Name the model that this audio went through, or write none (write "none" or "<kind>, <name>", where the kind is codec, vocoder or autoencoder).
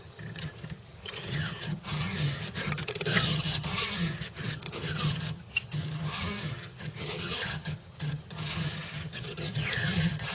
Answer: vocoder, HiFi-GAN